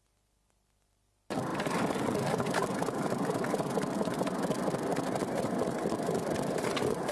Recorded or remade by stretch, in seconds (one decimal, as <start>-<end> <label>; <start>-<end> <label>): 0.0-7.1 recorded

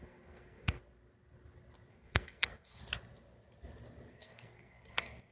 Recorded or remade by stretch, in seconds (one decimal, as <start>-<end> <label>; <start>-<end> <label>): 0.0-0.8 remade; 0.8-1.9 recorded; 1.9-2.8 remade; 2.8-4.1 recorded; 4.1-5.3 remade

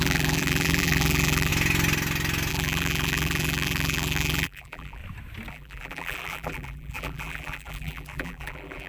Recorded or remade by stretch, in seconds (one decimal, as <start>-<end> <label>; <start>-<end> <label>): 0.0-1.5 remade; 1.5-2.5 recorded; 2.5-5.0 remade; 5.0-5.5 recorded; 5.5-8.9 remade